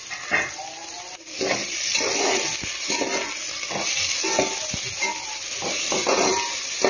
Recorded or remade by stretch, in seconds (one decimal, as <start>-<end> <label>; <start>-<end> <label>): 0.0-0.8 recorded; 0.8-2.0 remade; 2.0-6.9 recorded